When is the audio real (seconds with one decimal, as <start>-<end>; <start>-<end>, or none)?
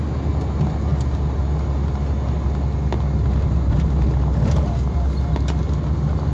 0.0-6.3